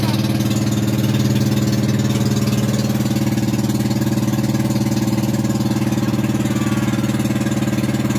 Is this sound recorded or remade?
recorded